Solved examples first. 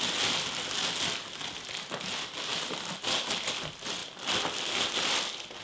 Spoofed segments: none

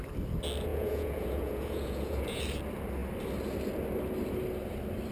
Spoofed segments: 0.7-2.4 (vocoder, Vocos)

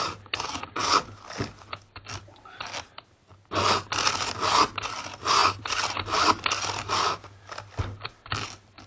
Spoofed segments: none

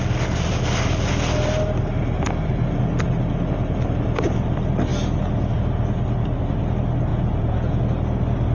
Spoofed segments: 7.1-7.8 (vocoder, Vocos)